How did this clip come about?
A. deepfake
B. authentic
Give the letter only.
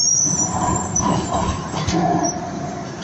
A